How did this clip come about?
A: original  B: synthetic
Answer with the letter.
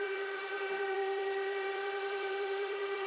B